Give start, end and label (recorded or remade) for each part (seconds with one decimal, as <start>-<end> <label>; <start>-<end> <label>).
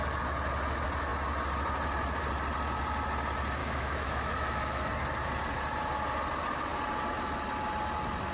0.0-3.6 recorded; 3.6-4.9 remade; 4.9-8.3 recorded